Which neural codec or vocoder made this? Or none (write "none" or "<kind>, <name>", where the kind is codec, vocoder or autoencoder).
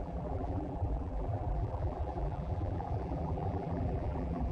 vocoder, BigVGAN v2